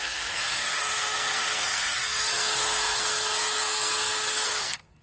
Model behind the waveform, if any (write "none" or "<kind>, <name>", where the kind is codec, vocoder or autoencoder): codec, SNAC